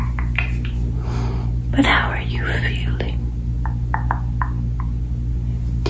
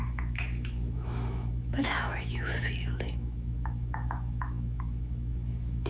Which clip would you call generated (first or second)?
second